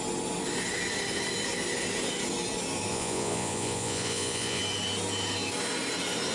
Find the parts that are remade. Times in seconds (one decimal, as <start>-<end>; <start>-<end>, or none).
2.9-4.6